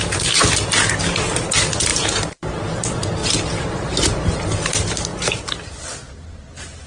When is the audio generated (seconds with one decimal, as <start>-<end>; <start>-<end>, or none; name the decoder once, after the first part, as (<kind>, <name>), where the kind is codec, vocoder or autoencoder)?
1.9-2.6 (vocoder, BigVGAN v2); 3.2-4.4